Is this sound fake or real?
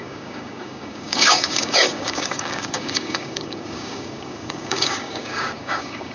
fake